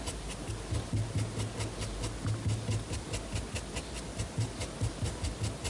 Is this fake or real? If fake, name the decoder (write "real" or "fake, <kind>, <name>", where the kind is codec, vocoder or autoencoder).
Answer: real